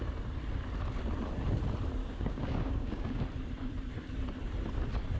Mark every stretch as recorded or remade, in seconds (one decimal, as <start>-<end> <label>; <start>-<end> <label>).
0.0-2.0 recorded; 2.0-3.2 remade; 3.2-5.2 recorded